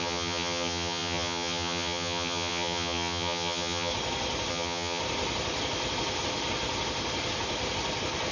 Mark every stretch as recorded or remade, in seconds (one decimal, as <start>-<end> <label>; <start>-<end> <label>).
0.0-3.9 remade; 3.9-4.5 recorded; 4.5-5.0 remade; 5.0-8.3 recorded